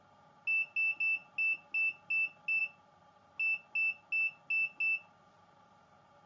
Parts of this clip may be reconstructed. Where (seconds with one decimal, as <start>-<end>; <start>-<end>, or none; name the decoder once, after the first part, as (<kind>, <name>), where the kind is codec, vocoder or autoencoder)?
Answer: none